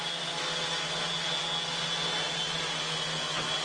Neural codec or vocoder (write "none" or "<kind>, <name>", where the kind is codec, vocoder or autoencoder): none